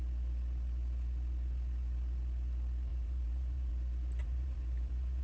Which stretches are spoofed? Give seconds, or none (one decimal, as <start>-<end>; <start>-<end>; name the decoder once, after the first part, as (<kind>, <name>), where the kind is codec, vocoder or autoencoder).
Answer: 2.9-3.7 (vocoder, BigVGAN v2); 4.2-5.2